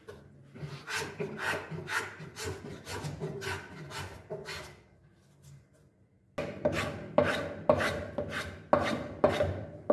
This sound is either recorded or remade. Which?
recorded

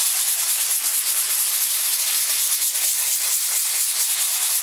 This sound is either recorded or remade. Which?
recorded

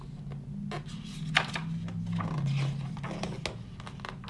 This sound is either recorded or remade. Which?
recorded